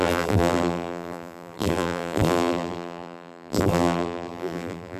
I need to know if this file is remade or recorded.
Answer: remade